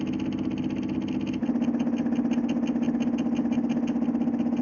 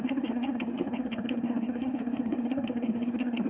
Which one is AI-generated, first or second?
second